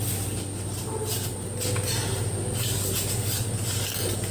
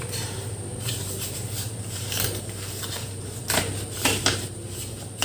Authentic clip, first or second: first